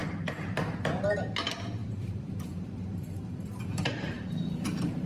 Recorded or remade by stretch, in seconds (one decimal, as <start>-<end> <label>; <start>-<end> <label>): 0.0-1.8 recorded; 1.8-5.1 remade